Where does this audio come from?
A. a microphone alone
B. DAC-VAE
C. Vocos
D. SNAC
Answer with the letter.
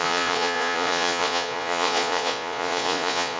C